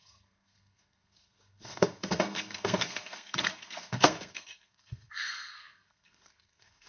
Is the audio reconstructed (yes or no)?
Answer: yes